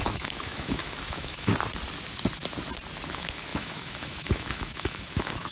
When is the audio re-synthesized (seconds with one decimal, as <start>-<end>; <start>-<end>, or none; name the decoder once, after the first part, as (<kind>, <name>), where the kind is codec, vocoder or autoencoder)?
0.0-1.5 (autoencoder, DAC-VAE); 3.1-5.5